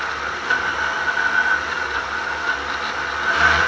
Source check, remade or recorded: recorded